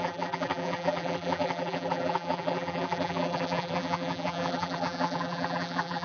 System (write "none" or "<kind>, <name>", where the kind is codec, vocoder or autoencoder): vocoder, BigVGAN v2